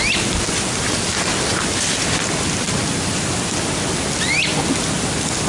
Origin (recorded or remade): recorded